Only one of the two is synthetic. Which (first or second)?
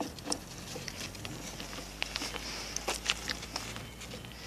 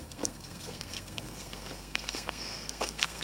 second